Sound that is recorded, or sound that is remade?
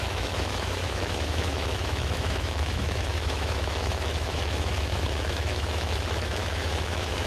remade